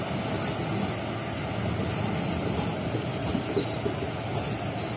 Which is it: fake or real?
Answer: real